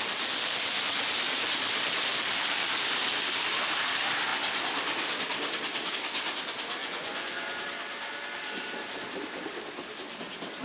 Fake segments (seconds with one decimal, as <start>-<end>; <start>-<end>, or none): 6.8-7.6